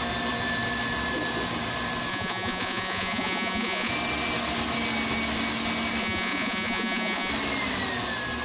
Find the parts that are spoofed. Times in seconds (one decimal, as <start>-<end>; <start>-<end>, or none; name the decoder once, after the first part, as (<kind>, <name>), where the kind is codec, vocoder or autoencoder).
2.1-3.9 (vocoder, Vocos); 6.0-7.3